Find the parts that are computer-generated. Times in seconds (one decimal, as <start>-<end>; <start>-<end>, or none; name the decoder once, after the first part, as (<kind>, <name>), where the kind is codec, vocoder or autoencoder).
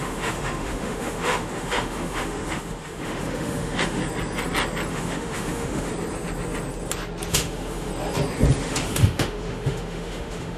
0.0-4.0 (autoencoder, DAC-VAE); 4.9-5.9; 7.3-7.9; 8.6-10.6